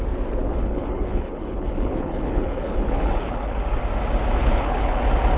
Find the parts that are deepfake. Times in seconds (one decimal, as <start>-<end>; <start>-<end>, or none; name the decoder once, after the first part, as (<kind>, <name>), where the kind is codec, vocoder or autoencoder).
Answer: 0.4-3.6 (codec, HILCodec); 4.4-5.0